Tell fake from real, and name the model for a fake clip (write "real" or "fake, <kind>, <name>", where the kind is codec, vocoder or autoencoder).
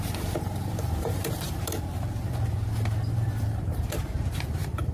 fake, vocoder, BigVGAN v2